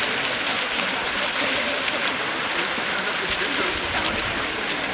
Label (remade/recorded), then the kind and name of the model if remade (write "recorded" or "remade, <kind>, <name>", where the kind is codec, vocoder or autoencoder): recorded